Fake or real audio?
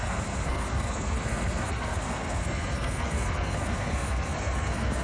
fake